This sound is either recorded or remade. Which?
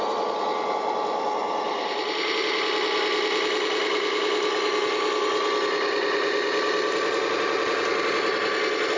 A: recorded